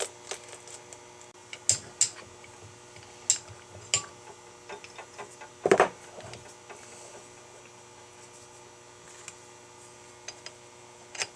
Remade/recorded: recorded